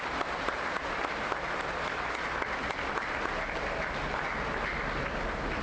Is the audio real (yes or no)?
yes